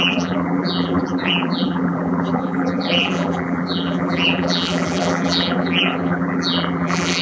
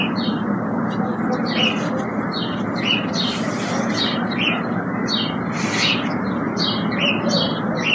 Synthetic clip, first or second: first